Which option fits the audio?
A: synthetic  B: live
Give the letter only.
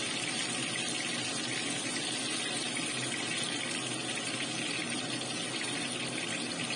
B